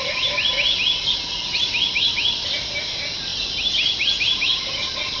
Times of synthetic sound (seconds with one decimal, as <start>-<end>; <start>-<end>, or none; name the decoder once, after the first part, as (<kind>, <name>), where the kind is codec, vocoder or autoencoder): none